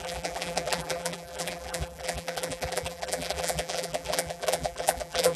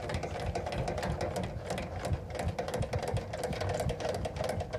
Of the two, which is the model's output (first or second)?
first